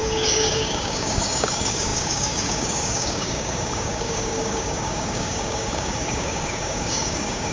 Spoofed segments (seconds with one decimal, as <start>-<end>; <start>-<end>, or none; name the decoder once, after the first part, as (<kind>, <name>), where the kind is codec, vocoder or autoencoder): 0.0-7.5 (codec, DAC)